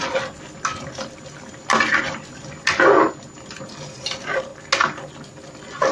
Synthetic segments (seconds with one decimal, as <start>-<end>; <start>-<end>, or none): none